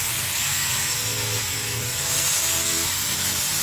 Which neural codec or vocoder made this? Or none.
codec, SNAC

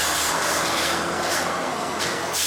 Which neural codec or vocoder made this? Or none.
codec, SNAC